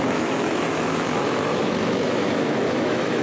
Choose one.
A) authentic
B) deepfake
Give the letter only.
B